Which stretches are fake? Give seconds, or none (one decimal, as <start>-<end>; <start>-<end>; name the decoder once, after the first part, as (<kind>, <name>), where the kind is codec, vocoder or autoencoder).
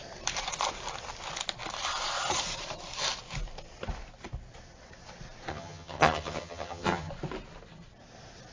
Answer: 5.5-7.1 (vocoder, HiFi-GAN)